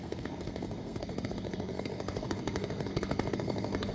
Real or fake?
fake